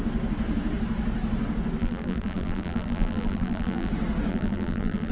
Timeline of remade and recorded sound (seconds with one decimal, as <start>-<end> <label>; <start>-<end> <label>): 0.0-1.8 recorded; 1.8-3.9 remade; 3.9-4.3 recorded; 4.3-5.1 remade